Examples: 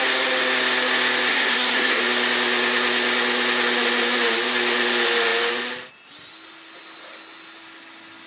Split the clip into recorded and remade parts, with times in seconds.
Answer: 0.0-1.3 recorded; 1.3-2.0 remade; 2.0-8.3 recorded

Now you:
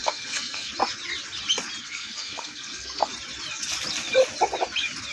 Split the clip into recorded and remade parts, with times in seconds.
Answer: 0.0-0.7 remade; 0.7-1.8 recorded; 1.8-3.1 remade; 3.1-5.1 recorded

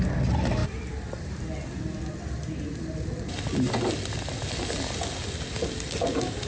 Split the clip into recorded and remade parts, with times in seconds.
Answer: 0.0-6.5 recorded

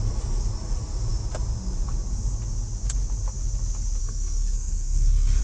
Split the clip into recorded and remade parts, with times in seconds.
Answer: 0.0-4.0 recorded; 4.0-5.4 remade